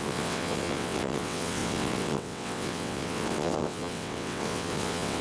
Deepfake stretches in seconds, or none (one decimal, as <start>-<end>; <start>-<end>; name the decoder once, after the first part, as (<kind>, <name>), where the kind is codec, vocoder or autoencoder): 0.0-5.2 (vocoder, WaveNeXt)